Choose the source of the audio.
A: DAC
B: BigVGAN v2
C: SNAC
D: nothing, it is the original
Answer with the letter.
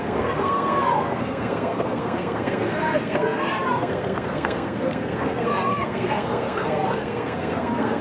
C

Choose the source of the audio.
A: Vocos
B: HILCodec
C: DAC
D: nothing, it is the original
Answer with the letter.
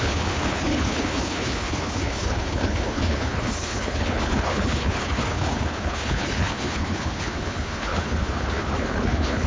B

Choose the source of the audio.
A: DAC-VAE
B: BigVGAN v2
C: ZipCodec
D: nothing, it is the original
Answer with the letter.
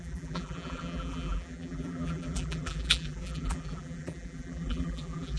B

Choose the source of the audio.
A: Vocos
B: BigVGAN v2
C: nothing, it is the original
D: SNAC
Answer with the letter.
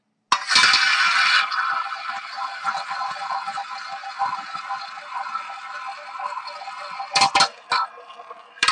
C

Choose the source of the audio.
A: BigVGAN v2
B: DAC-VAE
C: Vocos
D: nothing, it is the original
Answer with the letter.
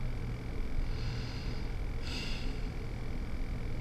A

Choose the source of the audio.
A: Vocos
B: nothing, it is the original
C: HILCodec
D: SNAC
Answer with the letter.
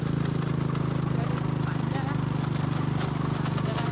B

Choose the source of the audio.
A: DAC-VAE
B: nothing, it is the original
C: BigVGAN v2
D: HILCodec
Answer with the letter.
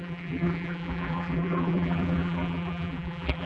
C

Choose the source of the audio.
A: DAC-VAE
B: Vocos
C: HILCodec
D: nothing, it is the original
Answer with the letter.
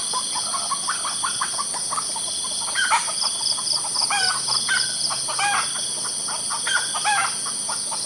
D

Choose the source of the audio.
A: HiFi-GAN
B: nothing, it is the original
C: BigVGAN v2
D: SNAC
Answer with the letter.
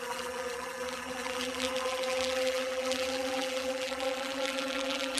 C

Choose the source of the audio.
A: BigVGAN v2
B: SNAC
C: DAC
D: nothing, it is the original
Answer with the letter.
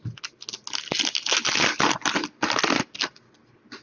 D